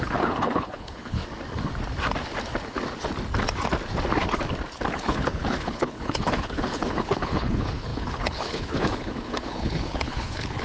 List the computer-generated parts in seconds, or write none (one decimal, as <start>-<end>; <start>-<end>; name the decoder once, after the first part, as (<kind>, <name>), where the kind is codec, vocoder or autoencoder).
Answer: 0.0-1.2 (codec, HILCodec); 4.9-10.6